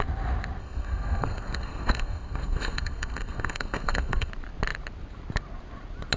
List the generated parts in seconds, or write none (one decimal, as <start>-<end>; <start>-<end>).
0.6-4.3